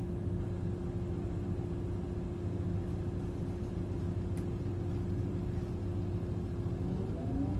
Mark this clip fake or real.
real